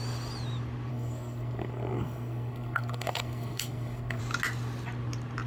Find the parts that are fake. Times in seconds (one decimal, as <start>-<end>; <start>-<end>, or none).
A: 0.9-4.2